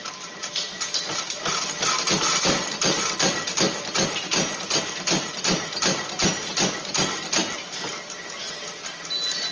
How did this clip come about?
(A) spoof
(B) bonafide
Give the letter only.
B